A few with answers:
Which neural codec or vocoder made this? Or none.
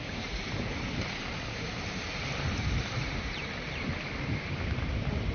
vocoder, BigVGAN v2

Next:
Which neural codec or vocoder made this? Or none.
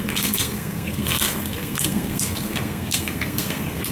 codec, SNAC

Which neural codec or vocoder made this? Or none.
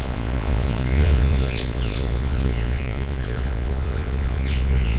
vocoder, Vocos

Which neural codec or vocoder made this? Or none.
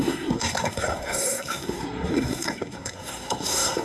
codec, SNAC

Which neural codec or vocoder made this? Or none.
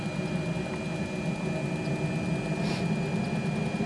none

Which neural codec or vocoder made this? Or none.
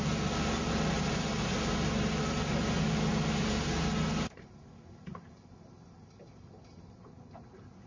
none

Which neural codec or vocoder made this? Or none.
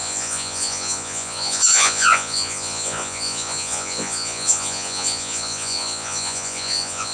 vocoder, Vocos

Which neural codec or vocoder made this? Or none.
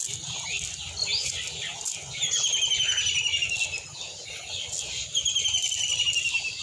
none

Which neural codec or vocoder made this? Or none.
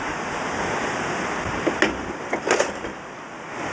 none